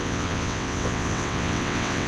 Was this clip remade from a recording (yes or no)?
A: yes